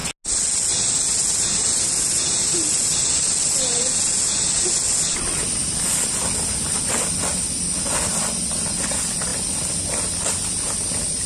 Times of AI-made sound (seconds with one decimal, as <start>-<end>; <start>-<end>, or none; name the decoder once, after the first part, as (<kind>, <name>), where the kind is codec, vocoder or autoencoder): none